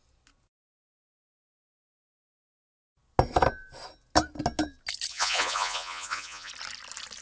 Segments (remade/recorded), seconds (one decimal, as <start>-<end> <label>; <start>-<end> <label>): 0.0-5.1 recorded; 5.1-6.5 remade; 6.5-7.2 recorded